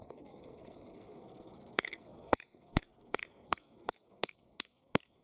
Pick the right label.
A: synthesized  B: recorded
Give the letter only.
A